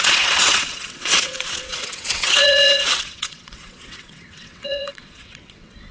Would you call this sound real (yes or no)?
no